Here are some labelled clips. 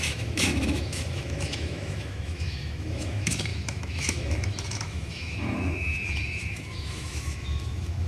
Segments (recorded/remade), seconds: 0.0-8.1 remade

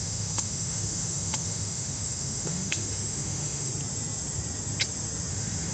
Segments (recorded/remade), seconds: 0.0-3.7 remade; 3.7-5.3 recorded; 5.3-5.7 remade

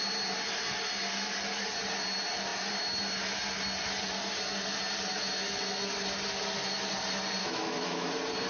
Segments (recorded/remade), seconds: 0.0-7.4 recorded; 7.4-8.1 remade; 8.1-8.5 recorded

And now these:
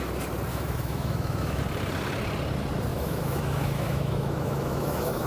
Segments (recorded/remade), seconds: 0.0-0.5 recorded; 0.5-1.6 remade; 1.6-2.9 recorded; 2.9-5.3 remade